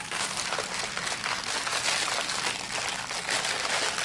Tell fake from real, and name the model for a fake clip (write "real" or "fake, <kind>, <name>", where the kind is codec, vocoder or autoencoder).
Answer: real